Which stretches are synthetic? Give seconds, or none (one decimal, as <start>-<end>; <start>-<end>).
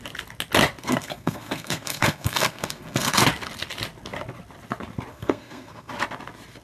0.8-3.2; 5.1-5.9